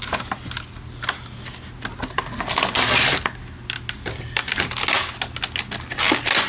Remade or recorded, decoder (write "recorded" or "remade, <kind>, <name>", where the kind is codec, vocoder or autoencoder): recorded